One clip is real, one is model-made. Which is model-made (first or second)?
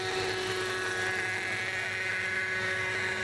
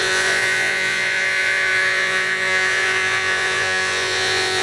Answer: second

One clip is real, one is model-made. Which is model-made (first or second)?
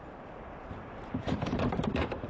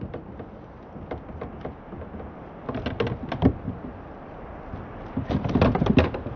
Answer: first